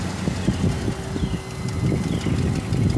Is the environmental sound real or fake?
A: real